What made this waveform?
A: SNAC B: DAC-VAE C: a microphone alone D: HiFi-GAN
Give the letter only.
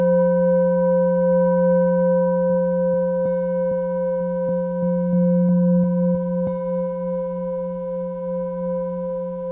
C